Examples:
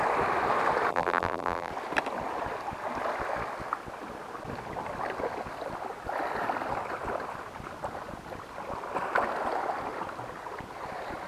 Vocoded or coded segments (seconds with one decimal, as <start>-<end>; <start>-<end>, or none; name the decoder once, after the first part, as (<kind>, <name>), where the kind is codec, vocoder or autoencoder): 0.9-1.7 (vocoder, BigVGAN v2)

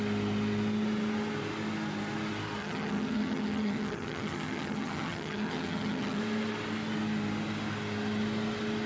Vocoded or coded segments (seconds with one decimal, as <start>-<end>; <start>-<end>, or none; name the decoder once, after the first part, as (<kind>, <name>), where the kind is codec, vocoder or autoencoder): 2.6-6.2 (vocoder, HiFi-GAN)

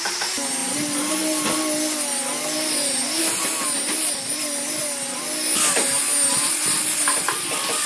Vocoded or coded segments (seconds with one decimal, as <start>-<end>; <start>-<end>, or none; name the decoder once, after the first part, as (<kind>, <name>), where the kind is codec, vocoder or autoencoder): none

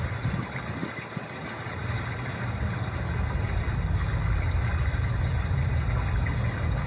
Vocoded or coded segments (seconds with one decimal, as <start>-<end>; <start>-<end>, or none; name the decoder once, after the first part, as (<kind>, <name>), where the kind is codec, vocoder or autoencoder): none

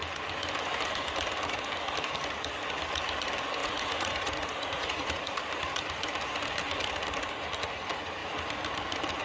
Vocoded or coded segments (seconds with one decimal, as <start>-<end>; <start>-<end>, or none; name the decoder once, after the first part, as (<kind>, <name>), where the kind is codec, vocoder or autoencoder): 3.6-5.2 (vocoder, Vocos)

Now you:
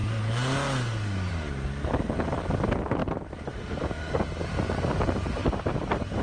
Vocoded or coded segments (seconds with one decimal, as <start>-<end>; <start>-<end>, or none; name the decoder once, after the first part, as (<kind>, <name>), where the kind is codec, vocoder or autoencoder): 5.4-6.2 (vocoder, BigVGAN v2)